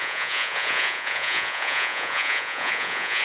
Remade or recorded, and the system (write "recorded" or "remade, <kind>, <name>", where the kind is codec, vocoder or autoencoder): remade, vocoder, Vocos